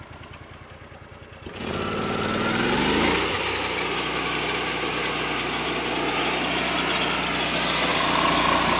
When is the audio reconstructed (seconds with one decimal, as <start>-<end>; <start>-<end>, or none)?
none